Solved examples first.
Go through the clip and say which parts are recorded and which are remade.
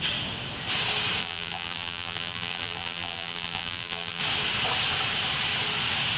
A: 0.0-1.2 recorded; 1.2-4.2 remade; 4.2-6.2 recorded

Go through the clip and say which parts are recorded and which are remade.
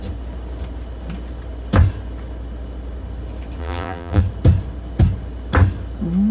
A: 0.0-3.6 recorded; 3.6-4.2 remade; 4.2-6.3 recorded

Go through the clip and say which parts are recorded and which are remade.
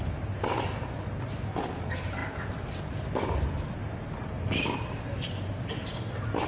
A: 0.0-3.8 recorded; 3.8-4.8 remade; 4.8-6.5 recorded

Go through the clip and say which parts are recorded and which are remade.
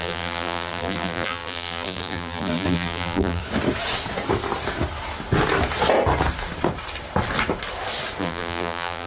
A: 0.0-3.4 remade; 3.4-8.2 recorded; 8.2-9.1 remade